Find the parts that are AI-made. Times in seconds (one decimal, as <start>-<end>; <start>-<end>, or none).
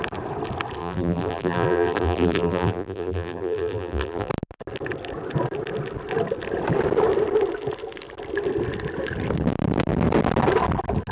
0.8-4.3